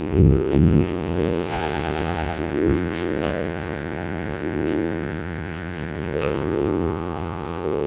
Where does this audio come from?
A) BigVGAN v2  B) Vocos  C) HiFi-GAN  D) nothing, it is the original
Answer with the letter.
B